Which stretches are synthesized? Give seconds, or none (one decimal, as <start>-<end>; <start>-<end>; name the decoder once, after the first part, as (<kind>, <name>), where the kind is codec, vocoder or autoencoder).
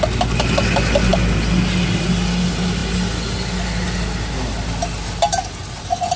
none